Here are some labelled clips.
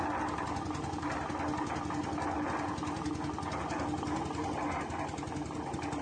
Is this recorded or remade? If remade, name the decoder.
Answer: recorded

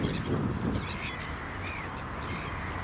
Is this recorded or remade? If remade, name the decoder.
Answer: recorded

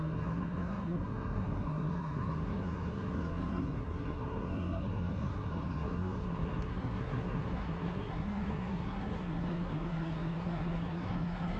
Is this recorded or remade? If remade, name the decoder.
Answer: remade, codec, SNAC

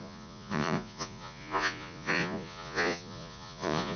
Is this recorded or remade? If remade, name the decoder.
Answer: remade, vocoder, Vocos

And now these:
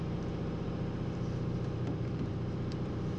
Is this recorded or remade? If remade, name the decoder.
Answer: remade, vocoder, BigVGAN v2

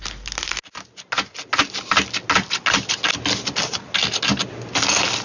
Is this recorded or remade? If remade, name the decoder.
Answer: recorded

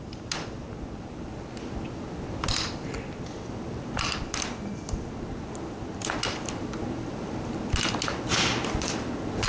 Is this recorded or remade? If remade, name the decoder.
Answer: recorded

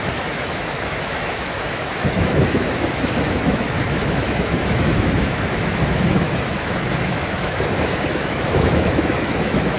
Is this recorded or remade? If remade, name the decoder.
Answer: remade, autoencoder, DAC-VAE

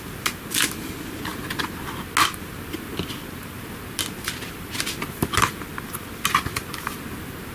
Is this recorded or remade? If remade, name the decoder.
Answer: recorded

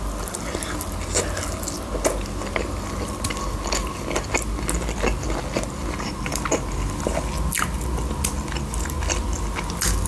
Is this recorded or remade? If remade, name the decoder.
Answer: recorded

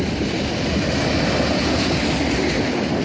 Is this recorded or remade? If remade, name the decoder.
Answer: recorded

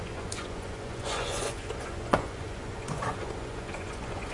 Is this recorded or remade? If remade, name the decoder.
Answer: remade, vocoder, Vocos